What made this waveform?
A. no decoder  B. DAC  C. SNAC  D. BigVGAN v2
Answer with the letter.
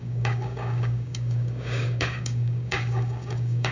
B